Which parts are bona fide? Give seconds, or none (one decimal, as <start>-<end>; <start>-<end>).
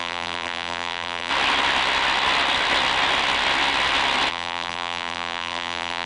1.3-4.3